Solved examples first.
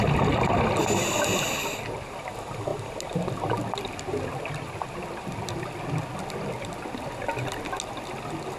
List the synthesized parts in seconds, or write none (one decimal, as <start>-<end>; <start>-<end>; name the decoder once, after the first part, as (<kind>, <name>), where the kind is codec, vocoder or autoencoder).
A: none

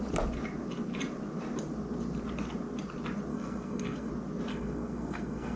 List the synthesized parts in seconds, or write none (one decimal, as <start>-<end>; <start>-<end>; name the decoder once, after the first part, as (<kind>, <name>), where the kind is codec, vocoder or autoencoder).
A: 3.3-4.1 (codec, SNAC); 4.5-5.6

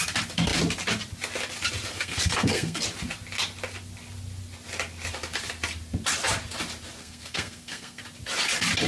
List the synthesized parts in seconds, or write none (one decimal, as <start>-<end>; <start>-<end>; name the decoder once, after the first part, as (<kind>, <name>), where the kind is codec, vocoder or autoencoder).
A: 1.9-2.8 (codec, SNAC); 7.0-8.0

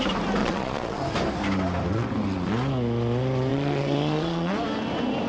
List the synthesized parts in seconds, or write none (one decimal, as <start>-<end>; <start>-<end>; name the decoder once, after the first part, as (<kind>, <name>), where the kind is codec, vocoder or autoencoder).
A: 0.4-1.0 (vocoder, Vocos); 3.5-4.5

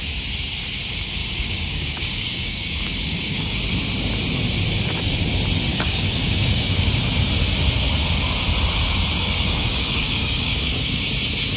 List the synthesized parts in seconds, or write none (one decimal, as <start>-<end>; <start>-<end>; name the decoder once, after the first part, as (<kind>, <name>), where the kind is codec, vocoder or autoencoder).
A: 1.2-3.6 (codec, DAC); 5.7-6.9; 9.2-11.1